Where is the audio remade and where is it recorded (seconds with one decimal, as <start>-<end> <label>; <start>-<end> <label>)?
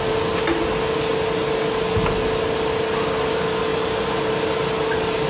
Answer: 0.0-5.3 recorded